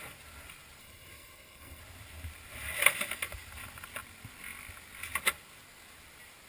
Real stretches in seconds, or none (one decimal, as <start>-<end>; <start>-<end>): 0.0-0.8; 1.8-6.5